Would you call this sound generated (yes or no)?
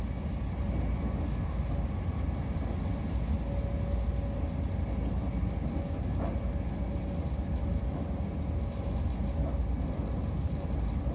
no